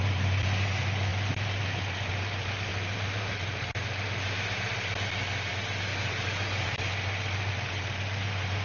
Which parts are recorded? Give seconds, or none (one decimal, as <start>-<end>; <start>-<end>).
0.0-1.1; 2.2-2.7; 3.7-8.6